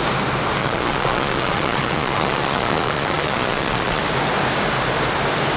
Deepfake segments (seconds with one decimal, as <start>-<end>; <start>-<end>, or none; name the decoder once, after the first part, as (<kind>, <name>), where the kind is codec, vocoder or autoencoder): 0.6-4.0 (vocoder, Vocos)